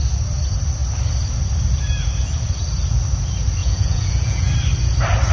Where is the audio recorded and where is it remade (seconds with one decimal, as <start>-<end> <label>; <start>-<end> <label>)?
0.0-3.6 recorded; 3.6-4.5 remade; 4.5-5.3 recorded